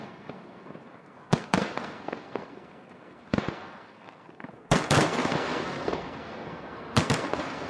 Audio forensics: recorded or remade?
remade